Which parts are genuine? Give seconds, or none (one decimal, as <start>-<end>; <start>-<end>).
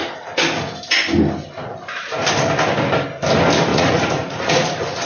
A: 0.0-3.7